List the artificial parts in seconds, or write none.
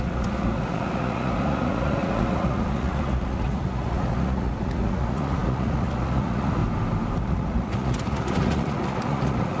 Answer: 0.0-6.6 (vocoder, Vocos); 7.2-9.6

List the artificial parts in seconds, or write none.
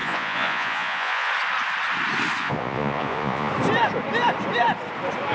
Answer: 0.0-1.3 (vocoder, Vocos); 2.4-3.5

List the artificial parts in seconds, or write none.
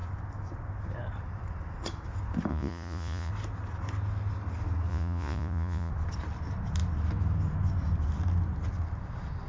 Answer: 2.5-3.3 (vocoder, Vocos); 4.9-5.9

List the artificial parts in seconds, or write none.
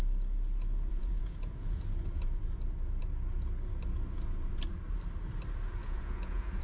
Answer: 0.9-1.8 (vocoder, Vocos); 5.8-6.6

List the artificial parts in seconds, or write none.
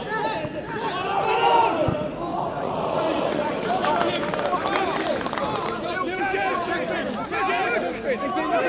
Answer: 2.3-3.7 (vocoder, Vocos)